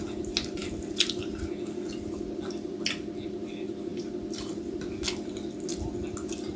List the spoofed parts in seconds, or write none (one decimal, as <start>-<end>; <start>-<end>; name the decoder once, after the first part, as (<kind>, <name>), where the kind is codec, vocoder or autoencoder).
none

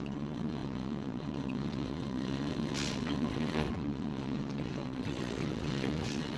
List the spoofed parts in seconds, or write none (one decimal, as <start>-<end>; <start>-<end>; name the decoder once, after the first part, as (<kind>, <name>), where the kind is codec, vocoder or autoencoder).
0.0-6.4 (vocoder, WaveNeXt)

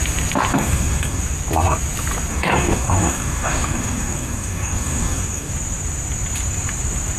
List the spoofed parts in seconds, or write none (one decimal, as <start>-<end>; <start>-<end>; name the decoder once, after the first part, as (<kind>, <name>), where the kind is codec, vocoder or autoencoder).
0.5-1.2 (codec, DAC); 2.3-5.5

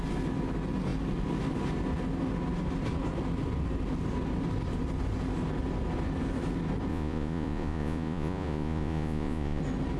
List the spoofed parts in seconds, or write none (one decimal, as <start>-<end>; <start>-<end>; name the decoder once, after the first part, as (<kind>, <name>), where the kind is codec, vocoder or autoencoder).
6.9-9.6 (vocoder, Vocos)

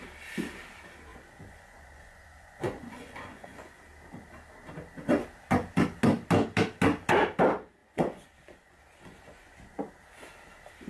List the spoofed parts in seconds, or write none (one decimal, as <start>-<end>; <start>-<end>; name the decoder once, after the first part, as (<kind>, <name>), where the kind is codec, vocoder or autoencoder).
1.1-3.8 (vocoder, Vocos); 7.8-9.8

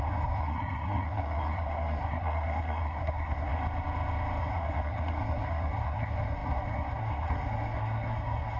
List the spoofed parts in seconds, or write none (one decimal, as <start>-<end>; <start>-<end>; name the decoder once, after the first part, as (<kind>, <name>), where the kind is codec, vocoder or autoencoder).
0.0-3.6 (codec, SNAC); 4.4-8.6